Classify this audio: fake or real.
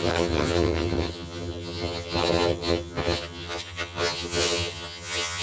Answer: fake